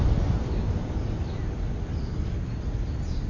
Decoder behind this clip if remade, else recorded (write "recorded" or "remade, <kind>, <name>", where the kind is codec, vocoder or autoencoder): recorded